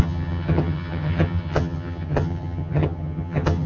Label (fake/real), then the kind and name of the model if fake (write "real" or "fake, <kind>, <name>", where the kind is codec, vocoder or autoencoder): fake, vocoder, HiFi-GAN